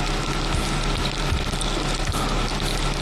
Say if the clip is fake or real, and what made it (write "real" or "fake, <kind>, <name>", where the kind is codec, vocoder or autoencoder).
real